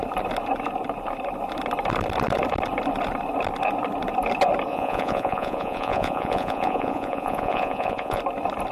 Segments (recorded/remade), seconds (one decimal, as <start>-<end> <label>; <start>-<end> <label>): 0.0-4.7 recorded; 4.7-8.2 remade; 8.2-8.7 recorded